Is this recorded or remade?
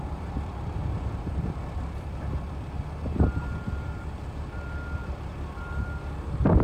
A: remade